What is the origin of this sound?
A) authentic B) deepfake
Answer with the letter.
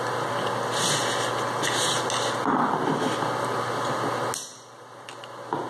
A